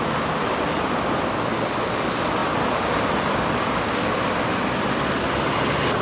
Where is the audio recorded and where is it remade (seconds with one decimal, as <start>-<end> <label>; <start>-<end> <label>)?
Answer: 0.0-6.0 recorded